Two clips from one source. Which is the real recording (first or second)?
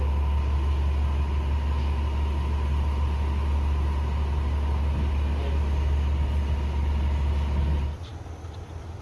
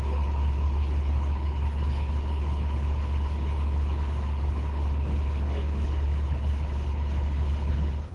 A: first